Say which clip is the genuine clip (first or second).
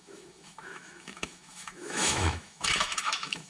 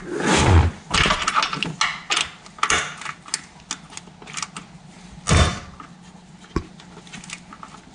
second